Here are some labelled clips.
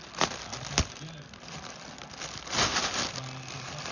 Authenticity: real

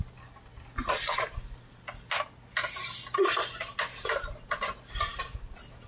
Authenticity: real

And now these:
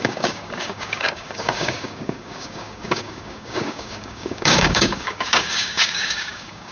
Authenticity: fake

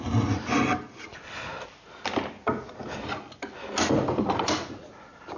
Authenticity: real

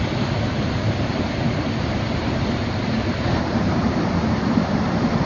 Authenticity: fake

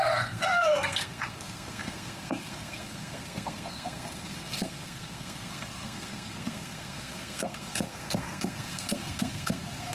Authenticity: fake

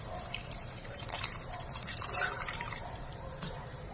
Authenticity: fake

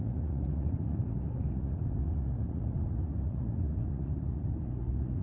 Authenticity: fake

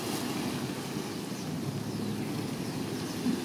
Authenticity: real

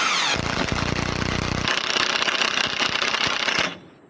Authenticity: real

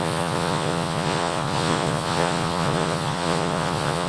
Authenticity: fake